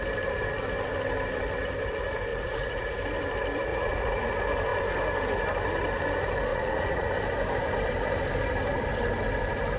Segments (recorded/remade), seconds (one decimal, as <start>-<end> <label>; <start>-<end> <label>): 0.0-2.3 recorded; 2.3-2.9 remade; 2.9-3.7 recorded; 3.7-4.3 remade; 4.3-6.5 recorded; 6.5-7.1 remade; 7.1-9.8 recorded